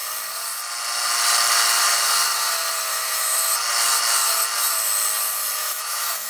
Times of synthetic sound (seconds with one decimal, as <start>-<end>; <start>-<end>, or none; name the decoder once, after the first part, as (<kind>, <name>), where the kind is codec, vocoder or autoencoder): 2.9-3.5 (autoencoder, DAC-VAE); 5.6-6.3